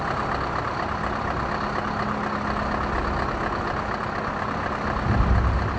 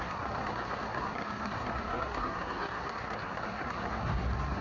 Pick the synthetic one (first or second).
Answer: second